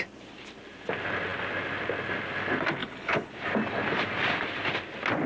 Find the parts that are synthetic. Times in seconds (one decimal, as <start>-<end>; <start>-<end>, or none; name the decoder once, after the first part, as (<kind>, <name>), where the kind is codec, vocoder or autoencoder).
2.8-3.3 (codec, HILCodec)